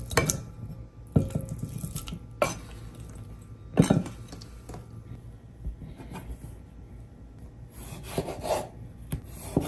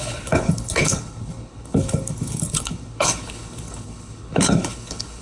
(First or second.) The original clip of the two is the first